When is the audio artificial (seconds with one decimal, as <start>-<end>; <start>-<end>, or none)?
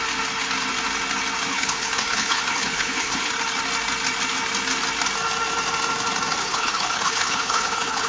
1.5-3.3; 6.4-8.1